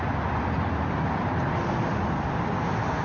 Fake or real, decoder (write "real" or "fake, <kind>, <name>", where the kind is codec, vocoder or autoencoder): real